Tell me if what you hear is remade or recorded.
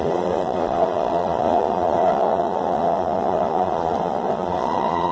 remade